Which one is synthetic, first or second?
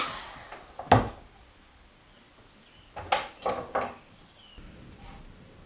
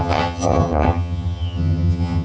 second